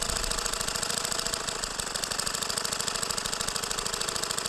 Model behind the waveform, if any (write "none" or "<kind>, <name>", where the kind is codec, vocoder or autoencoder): none